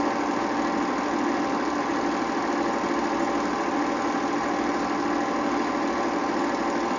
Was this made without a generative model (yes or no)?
yes